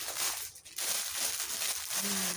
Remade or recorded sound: recorded